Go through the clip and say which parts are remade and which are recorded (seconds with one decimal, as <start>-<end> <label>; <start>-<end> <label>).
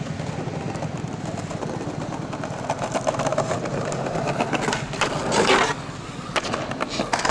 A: 0.0-3.3 recorded; 3.3-4.4 remade; 4.4-7.3 recorded